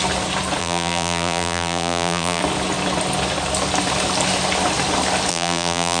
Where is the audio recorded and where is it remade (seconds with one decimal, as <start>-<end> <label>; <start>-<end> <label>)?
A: 0.0-0.6 recorded; 0.6-2.4 remade; 2.4-5.3 recorded; 5.3-6.0 remade